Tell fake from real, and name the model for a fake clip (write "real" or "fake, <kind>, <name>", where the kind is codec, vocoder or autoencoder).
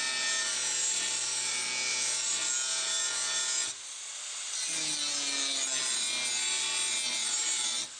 real